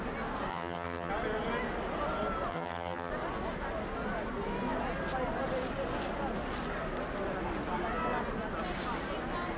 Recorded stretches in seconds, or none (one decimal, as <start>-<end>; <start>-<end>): 0.0-0.5; 1.1-2.5; 3.1-9.6